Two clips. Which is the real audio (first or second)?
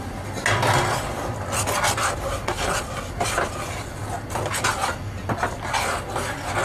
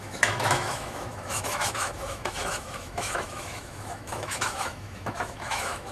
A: first